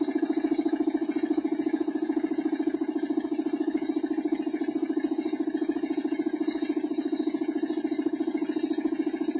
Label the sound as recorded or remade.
remade